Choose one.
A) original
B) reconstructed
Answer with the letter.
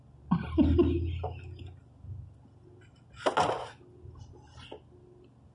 A